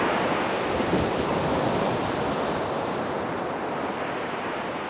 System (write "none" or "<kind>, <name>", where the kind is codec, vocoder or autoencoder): none